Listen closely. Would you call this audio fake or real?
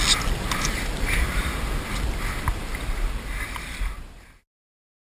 real